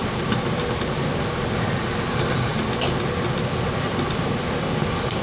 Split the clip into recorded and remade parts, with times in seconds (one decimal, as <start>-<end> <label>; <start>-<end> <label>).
0.0-5.2 recorded